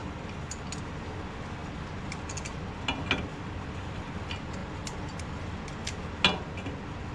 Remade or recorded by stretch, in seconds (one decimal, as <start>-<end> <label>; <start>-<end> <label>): 0.0-7.1 recorded